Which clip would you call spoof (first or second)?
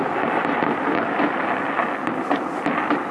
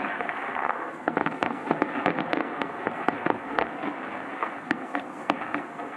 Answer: second